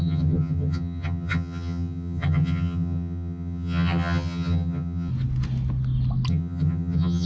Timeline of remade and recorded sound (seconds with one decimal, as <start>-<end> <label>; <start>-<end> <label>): 0.0-5.1 remade; 5.1-6.3 recorded; 6.3-7.3 remade